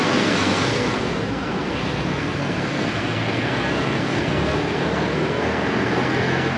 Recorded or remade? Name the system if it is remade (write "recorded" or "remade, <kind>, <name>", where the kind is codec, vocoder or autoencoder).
remade, codec, SNAC